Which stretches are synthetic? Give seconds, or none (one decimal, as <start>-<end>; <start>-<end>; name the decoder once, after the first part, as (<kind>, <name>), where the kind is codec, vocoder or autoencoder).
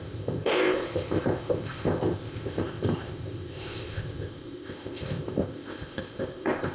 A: 0.0-6.7 (codec, ZipCodec)